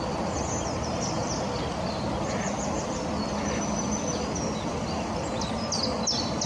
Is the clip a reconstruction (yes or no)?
no